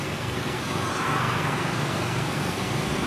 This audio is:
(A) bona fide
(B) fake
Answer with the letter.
B